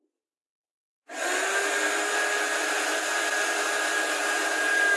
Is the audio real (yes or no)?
yes